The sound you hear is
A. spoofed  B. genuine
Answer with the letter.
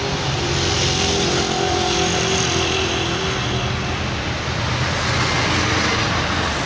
B